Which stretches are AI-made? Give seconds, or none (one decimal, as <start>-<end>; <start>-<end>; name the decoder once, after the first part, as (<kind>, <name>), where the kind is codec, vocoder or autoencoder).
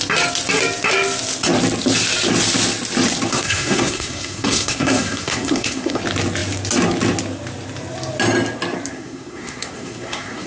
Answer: 3.3-6.0 (codec, SNAC); 8.9-10.5